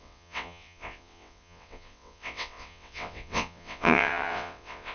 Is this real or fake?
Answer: fake